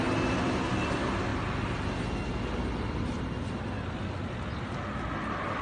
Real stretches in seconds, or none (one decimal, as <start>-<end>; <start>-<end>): 0.0-5.6